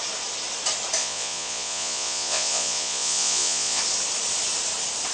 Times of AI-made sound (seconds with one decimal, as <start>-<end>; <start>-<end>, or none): 1.0-3.8